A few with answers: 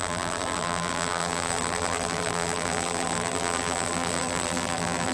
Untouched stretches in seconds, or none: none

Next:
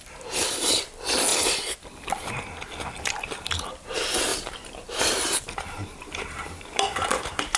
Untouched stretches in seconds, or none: 1.3-3.0

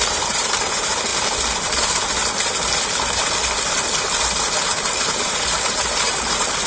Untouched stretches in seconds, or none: 1.1-5.1

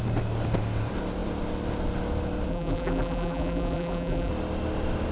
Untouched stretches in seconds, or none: 0.0-2.5; 4.3-5.1

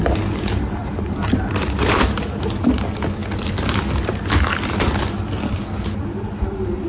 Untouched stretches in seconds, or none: 3.2-6.9

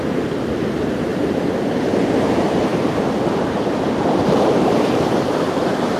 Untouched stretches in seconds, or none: 1.1-2.2